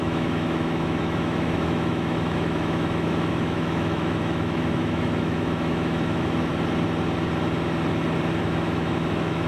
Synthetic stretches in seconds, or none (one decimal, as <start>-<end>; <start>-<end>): 0.0-6.5; 8.4-9.5